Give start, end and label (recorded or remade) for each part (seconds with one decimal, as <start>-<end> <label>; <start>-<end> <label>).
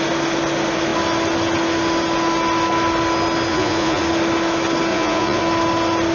0.0-3.5 recorded; 3.5-4.0 remade; 4.0-4.9 recorded; 4.9-5.4 remade; 5.4-6.1 recorded